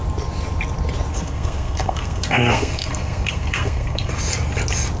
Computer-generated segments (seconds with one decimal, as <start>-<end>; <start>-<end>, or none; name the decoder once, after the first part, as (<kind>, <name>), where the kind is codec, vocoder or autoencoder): 1.1-4.1 (codec, SNAC)